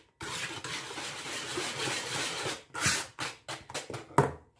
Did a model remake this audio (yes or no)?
no